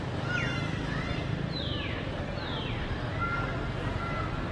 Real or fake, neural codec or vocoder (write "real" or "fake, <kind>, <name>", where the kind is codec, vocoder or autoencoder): real